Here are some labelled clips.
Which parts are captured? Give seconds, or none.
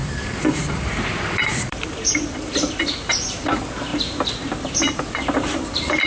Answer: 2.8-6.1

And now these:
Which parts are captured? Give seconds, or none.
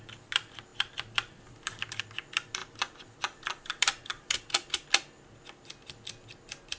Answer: 0.0-0.7; 2.0-2.6; 4.7-6.8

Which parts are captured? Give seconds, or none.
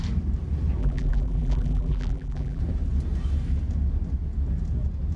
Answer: 0.0-0.8; 2.6-5.2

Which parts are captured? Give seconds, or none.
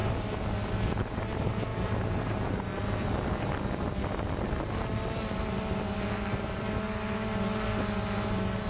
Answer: 1.2-1.7; 2.5-8.7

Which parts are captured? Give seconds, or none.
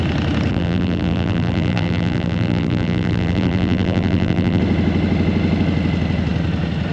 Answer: 0.0-0.5; 4.6-6.9